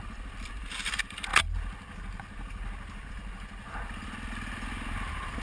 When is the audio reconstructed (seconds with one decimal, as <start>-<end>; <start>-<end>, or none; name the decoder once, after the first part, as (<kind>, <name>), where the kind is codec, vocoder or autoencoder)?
none